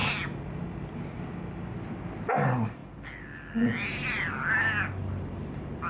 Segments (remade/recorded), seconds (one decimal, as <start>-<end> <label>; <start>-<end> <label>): 0.0-5.9 recorded